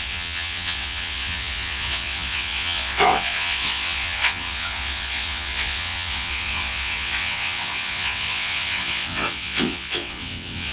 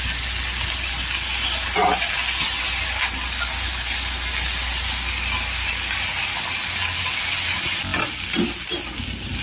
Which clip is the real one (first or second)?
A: second